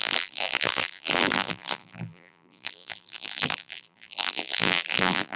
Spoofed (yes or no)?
yes